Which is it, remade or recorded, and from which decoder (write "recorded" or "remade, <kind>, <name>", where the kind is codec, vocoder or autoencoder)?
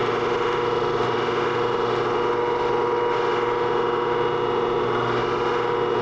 recorded